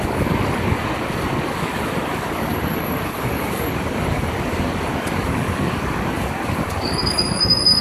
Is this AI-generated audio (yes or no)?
yes